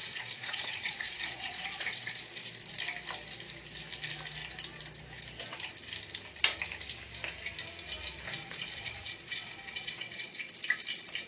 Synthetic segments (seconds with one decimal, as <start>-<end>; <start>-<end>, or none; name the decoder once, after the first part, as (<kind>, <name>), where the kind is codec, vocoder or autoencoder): 0.0-2.5 (vocoder, Vocos); 8.4-10.5